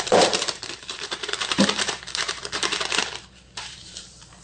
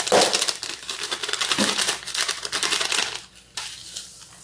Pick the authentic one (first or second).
second